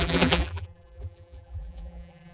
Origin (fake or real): fake